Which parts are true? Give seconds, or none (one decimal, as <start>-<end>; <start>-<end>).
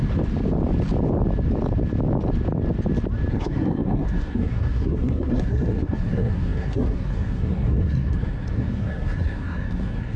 0.0-3.3